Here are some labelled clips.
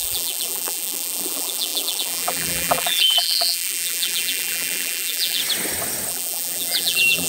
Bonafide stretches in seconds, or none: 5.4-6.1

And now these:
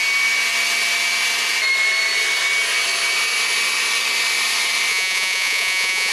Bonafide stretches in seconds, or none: 0.0-4.9